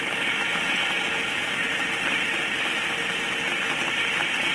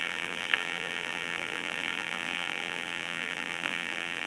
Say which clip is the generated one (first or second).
second